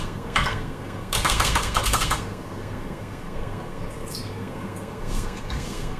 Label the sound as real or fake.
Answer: fake